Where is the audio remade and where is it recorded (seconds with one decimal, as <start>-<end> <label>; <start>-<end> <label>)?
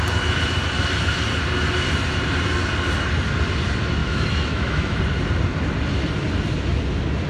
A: 0.0-4.0 recorded; 4.0-5.0 remade; 5.0-7.3 recorded